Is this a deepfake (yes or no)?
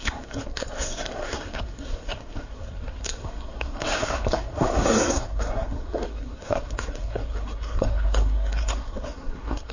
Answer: yes